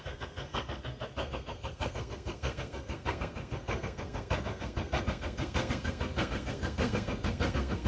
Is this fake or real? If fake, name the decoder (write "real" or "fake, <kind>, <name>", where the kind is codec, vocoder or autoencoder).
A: fake, codec, SNAC